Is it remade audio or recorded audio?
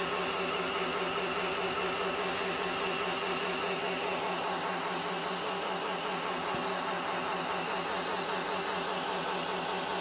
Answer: recorded